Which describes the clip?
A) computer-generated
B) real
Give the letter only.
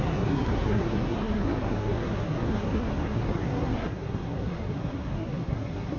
A